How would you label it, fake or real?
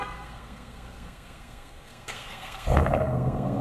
fake